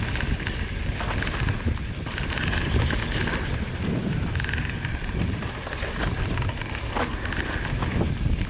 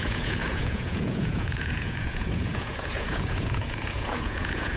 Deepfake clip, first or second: second